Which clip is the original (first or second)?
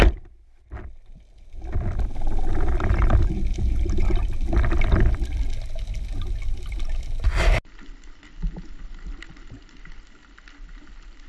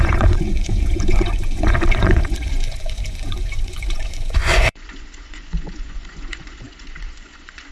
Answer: first